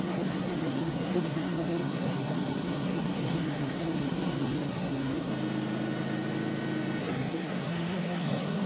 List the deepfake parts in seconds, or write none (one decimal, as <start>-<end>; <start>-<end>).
0.0-5.3; 7.0-8.7